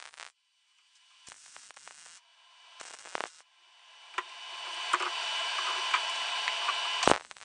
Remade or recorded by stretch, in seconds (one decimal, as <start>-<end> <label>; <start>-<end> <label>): 0.0-7.4 recorded